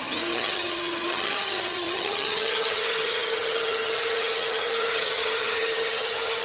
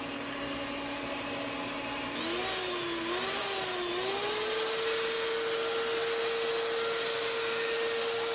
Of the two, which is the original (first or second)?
second